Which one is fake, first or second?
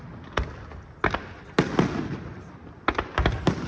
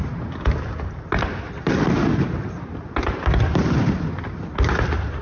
second